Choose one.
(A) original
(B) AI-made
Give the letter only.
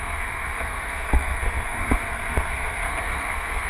B